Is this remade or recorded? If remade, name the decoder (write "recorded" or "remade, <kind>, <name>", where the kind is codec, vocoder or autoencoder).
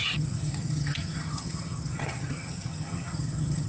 remade, vocoder, HiFi-GAN